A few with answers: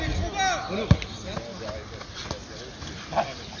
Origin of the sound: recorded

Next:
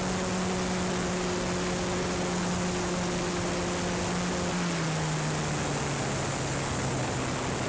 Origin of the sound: recorded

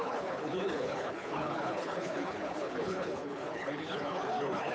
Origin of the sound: remade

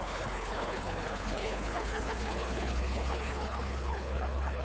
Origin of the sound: remade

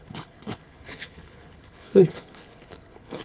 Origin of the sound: remade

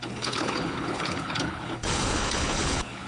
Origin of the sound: remade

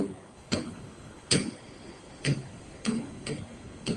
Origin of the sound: remade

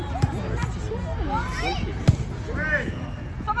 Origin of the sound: recorded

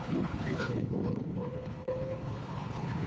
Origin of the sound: remade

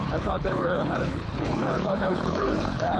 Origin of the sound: remade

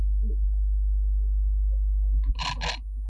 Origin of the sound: recorded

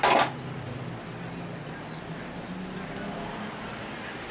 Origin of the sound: recorded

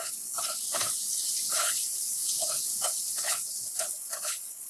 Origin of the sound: remade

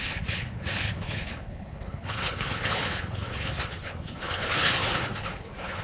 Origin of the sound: remade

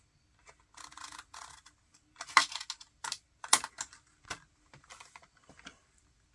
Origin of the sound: recorded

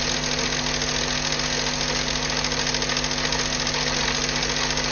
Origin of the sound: recorded